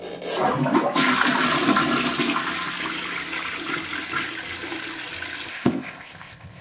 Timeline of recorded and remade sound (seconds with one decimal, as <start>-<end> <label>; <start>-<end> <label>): 0.0-5.5 recorded; 5.5-6.6 remade

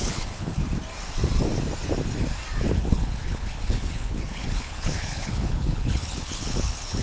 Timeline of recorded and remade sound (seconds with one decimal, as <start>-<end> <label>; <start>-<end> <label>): 0.0-0.6 remade; 0.6-2.6 recorded; 2.6-7.0 remade

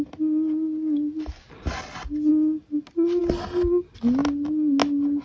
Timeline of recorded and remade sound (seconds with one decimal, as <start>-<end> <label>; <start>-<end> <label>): 0.0-5.2 recorded

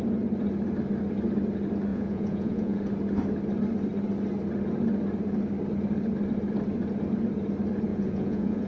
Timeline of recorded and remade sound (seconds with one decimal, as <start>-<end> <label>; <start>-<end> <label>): 0.0-1.9 recorded; 1.9-2.8 remade; 2.8-7.9 recorded; 7.9-8.7 remade

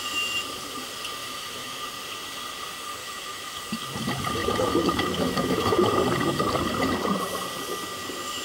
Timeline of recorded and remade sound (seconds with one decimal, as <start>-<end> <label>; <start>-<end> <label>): 0.0-1.2 recorded; 1.2-1.8 remade; 1.8-3.0 recorded; 3.0-3.6 remade; 3.6-4.4 recorded; 4.4-5.9 remade; 5.9-8.4 recorded